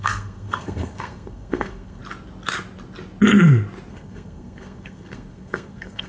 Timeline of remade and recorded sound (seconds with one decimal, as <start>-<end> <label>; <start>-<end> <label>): 0.0-2.0 remade; 2.0-3.9 recorded; 3.9-6.1 remade